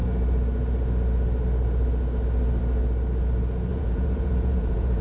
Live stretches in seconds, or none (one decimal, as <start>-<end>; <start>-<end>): 0.0-3.7